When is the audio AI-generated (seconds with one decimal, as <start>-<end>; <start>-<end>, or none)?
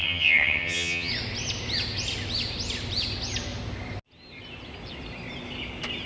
0.0-1.1